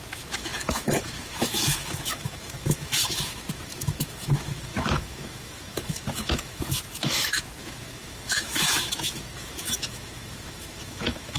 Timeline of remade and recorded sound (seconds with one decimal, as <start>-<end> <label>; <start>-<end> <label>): 0.0-11.4 remade

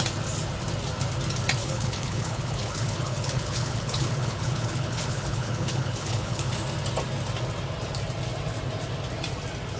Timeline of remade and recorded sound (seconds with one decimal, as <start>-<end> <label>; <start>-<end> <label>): 0.0-1.6 recorded; 1.6-6.5 remade; 6.5-9.8 recorded

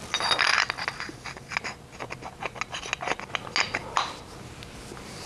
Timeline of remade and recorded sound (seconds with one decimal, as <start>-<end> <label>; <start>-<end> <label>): 0.0-5.3 recorded

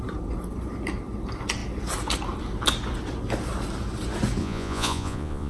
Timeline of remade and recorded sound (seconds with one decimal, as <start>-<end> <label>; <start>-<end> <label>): 0.0-4.4 recorded; 4.4-5.5 remade

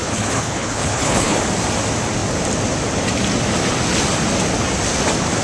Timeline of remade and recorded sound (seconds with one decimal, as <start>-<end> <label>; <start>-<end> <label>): 0.0-1.4 remade; 1.4-5.4 recorded

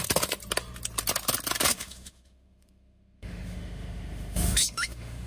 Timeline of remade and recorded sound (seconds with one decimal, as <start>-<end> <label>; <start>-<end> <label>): 0.0-1.7 recorded; 1.7-5.3 remade

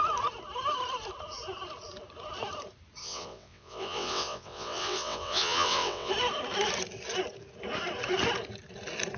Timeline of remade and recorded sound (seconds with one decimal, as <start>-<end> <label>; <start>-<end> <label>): 0.0-3.0 recorded; 3.0-6.1 remade; 6.1-9.2 recorded

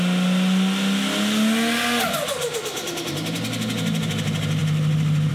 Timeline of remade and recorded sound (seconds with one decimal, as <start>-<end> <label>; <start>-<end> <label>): 0.0-5.3 recorded